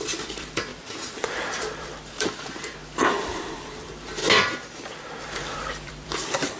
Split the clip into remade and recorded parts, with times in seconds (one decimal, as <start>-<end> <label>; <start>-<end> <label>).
0.0-0.7 remade; 0.7-1.3 recorded; 1.3-2.8 remade; 2.8-3.6 recorded; 3.6-4.2 remade; 4.2-4.8 recorded; 4.8-6.6 remade